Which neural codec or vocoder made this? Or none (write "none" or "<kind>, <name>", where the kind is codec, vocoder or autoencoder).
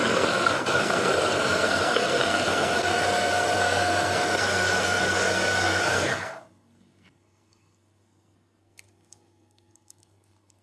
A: codec, SNAC